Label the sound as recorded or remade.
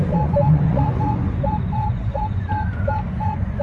remade